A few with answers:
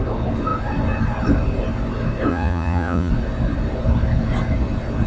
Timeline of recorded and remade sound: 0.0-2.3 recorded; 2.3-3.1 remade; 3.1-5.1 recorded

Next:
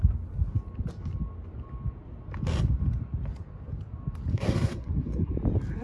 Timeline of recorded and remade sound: 0.0-4.3 recorded; 4.3-5.3 remade; 5.3-5.8 recorded

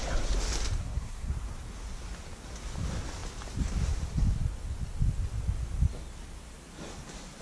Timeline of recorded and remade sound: 0.0-0.8 recorded; 0.8-1.3 remade; 1.3-7.4 recorded